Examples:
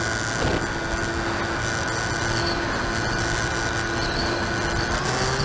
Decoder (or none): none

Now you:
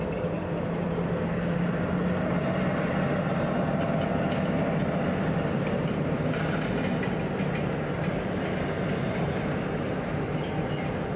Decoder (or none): none